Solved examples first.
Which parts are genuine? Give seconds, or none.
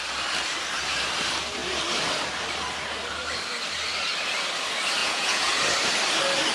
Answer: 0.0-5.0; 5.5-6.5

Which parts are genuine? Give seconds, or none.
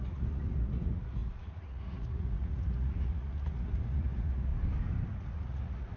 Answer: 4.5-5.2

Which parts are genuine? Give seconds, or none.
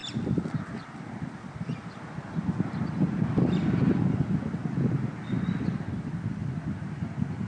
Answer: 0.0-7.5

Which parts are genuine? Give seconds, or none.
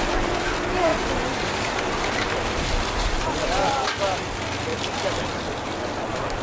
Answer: 0.0-0.9; 4.2-6.4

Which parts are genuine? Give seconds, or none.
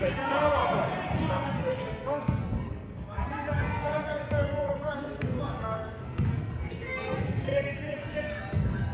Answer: 0.6-1.3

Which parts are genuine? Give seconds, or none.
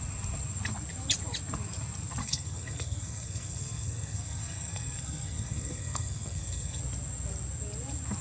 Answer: 0.0-2.2; 6.8-8.2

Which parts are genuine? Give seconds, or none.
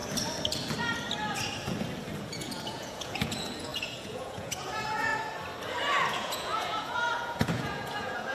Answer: 0.0-2.2; 5.1-6.1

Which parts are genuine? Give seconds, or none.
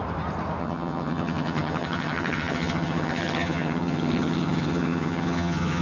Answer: 0.0-0.6